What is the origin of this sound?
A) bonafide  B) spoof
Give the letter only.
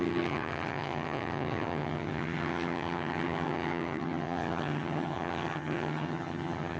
B